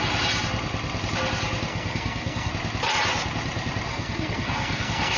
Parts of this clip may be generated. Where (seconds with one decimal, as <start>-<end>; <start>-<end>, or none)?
1.7-2.5; 3.9-5.2